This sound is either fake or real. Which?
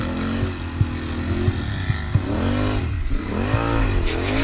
real